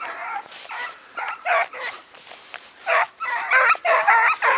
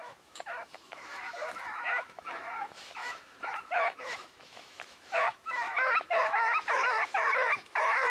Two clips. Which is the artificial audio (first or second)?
second